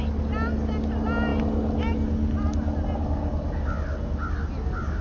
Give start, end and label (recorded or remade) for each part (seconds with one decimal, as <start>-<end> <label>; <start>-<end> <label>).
0.0-5.0 recorded